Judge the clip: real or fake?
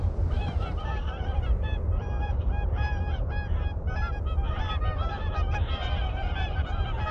fake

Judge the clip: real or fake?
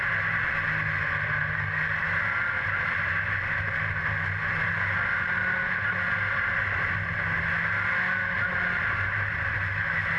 real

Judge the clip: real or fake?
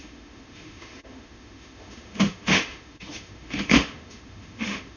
fake